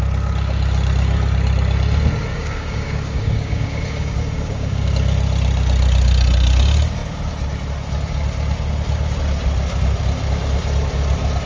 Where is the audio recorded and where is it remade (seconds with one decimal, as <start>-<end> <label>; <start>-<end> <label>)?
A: 0.0-2.3 recorded; 2.3-4.9 remade; 4.9-11.5 recorded